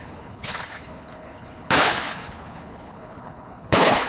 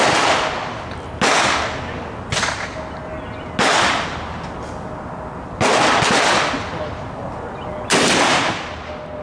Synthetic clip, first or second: first